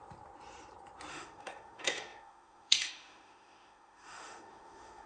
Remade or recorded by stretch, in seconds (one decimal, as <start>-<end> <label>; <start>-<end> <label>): 0.0-1.1 recorded; 1.1-5.1 remade